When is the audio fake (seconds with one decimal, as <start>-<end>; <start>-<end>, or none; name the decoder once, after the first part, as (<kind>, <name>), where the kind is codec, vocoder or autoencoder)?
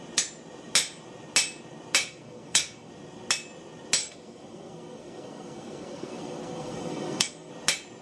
2.0-2.9 (codec, SNAC); 4.0-7.5